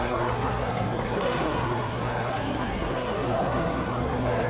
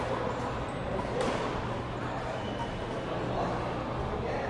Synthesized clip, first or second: first